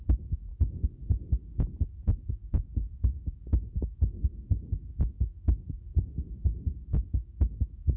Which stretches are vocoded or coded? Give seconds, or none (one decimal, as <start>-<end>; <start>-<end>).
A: 0.0-0.5; 2.3-8.0